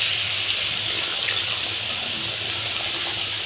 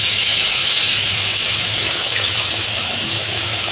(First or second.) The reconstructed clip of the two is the second